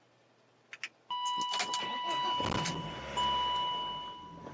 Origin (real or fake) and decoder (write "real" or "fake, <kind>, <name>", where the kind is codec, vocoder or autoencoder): real